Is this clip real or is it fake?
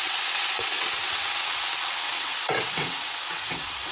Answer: fake